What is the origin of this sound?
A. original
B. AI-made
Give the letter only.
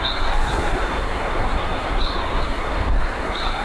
B